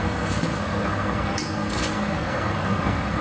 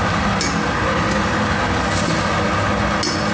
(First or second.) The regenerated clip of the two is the first